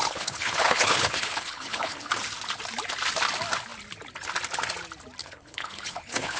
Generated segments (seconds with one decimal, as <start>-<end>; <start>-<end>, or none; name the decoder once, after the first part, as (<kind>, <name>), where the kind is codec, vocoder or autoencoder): 0.0-2.1 (codec, HILCodec); 5.2-6.4